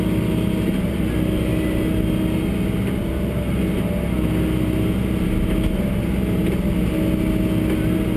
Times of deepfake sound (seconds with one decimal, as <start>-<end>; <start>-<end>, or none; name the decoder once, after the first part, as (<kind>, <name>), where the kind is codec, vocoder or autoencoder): none